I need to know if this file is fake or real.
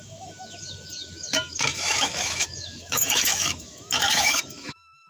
fake